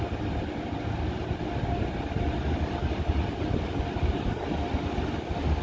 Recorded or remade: recorded